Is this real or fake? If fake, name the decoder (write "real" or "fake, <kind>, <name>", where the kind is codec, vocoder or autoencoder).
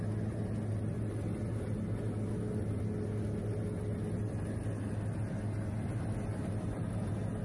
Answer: real